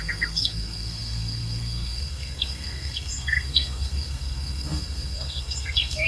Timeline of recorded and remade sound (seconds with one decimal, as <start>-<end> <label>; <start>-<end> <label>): 0.0-6.1 remade